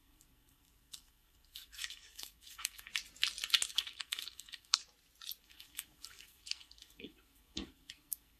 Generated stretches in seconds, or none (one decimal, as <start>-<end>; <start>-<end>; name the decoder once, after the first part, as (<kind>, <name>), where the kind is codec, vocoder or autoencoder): 0.0-2.9 (codec, SNAC); 3.7-4.8; 5.4-8.4